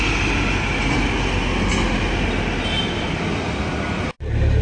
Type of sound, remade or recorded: recorded